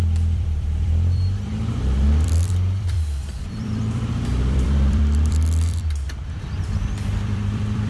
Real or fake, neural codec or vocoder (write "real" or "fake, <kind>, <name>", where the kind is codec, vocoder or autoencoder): fake, vocoder, BigVGAN v2